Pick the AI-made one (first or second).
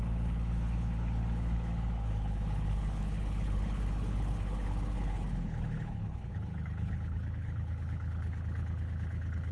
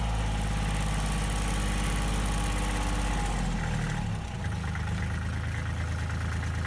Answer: first